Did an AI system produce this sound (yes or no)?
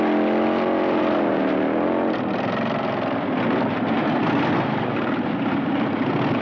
no